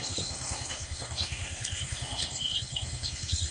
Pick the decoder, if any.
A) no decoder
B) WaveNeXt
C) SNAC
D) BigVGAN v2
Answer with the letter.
C